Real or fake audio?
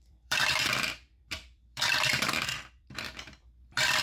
fake